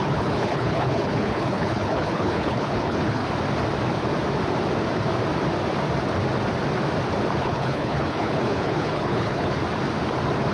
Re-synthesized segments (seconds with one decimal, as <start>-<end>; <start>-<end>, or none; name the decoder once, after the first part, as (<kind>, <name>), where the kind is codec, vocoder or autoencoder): 0.0-3.2 (codec, HILCodec); 7.4-9.6